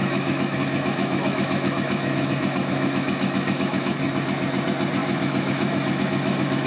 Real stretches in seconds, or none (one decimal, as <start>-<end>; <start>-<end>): 4.0-5.0